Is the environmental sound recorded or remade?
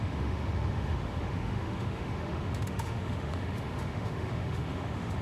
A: remade